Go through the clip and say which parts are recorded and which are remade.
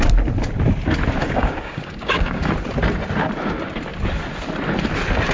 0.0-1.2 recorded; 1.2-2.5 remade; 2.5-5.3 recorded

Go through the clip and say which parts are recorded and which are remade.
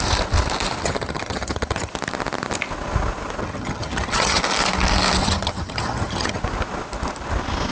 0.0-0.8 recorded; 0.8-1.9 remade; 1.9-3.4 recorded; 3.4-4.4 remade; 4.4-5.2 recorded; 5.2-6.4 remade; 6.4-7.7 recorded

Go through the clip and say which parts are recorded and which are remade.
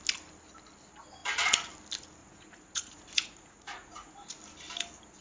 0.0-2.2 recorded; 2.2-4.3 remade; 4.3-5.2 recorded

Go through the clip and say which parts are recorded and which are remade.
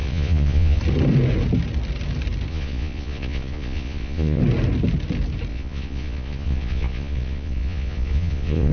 0.0-0.8 remade; 0.8-2.5 recorded; 2.5-4.4 remade; 4.4-5.5 recorded; 5.5-8.7 remade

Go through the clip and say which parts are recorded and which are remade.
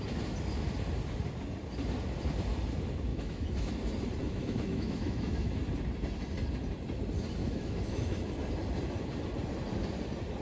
0.0-3.1 recorded; 3.1-3.7 remade; 3.7-4.2 recorded; 4.2-5.6 remade; 5.6-7.4 recorded; 7.4-8.3 remade; 8.3-10.4 recorded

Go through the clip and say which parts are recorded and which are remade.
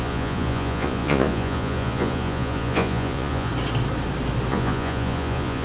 0.0-3.5 remade; 3.5-4.5 recorded; 4.5-5.6 remade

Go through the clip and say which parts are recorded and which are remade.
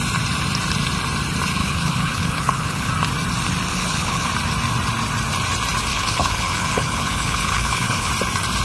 0.0-1.6 recorded; 1.6-2.9 remade; 2.9-3.7 recorded; 3.7-4.3 remade; 4.3-5.9 recorded; 5.9-8.1 remade; 8.1-8.6 recorded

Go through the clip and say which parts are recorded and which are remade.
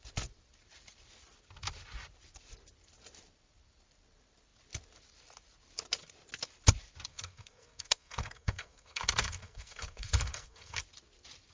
0.0-7.1 recorded; 7.1-10.8 remade; 10.8-11.5 recorded